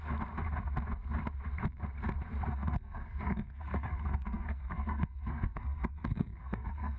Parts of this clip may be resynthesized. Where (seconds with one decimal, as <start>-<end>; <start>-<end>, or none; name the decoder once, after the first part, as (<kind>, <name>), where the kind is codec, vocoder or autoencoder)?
2.5-7.0 (codec, SNAC)